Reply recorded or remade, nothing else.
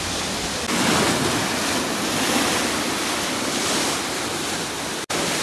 recorded